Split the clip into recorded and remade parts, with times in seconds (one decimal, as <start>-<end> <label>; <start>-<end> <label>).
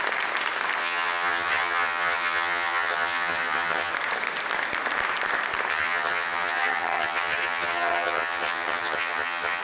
0.0-0.8 recorded; 0.8-3.9 remade; 3.9-5.7 recorded; 5.7-9.6 remade